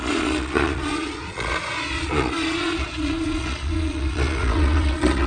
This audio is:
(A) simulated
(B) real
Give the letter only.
A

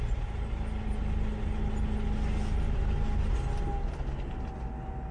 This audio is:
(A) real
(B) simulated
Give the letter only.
A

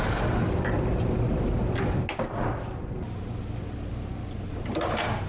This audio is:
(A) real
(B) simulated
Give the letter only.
A